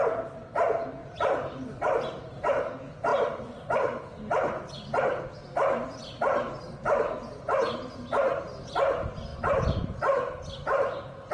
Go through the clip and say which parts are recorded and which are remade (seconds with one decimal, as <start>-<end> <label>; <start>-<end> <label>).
0.0-1.0 recorded; 1.0-2.6 remade; 2.6-3.1 recorded; 3.1-4.0 remade; 4.0-9.3 recorded; 9.3-10.0 remade; 10.0-11.3 recorded